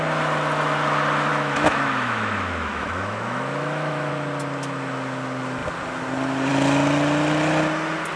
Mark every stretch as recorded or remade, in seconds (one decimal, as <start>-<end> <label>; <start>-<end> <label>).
0.0-1.3 recorded; 1.3-4.1 remade; 4.1-8.2 recorded